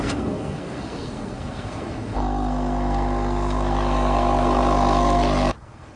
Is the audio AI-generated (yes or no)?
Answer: yes